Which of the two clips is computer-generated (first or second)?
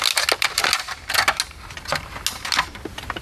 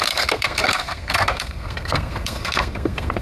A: second